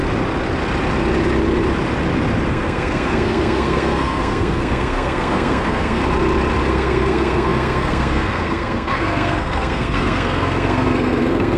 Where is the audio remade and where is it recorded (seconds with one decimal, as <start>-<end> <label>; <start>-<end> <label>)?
0.0-2.5 recorded; 2.5-6.0 remade; 6.0-6.7 recorded; 6.7-11.6 remade